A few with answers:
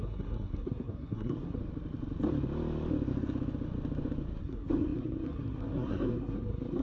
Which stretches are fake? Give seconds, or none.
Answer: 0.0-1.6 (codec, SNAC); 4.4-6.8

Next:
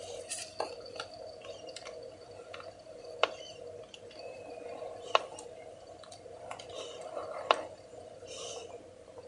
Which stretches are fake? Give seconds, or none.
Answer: none